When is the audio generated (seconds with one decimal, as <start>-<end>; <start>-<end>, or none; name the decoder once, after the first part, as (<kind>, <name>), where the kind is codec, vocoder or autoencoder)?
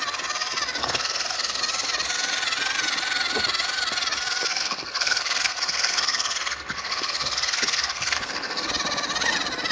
0.8-1.6 (codec, SNAC); 4.5-8.7